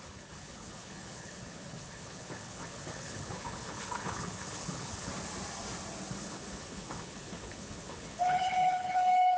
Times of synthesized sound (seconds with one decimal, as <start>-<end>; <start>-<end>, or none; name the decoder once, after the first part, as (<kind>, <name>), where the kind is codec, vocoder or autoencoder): 0.0-5.1 (codec, HILCodec); 6.1-9.4